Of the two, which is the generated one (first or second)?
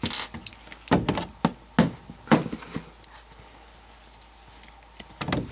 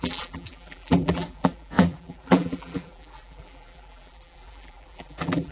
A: second